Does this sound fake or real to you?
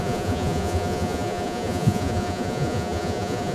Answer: fake